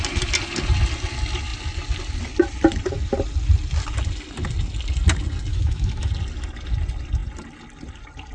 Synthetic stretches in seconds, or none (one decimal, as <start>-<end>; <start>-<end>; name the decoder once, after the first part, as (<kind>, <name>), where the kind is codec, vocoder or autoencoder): 5.5-6.1 (autoencoder, DAC-VAE)

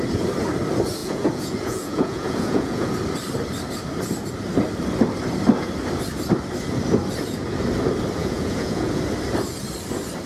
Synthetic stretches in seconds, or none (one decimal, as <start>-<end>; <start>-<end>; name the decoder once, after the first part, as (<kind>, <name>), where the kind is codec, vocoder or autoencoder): 1.0-2.9 (vocoder, Vocos); 8.2-9.0